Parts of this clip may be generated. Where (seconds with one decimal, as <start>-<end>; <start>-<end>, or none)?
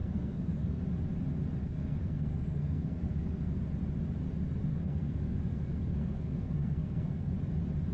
0.0-0.8; 1.6-3.6; 4.7-7.3